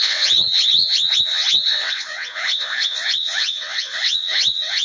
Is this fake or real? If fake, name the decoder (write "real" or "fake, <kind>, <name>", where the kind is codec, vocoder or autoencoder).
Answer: fake, vocoder, WaveNeXt